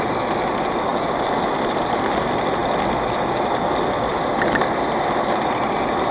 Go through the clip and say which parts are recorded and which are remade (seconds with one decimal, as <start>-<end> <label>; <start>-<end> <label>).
0.0-6.1 recorded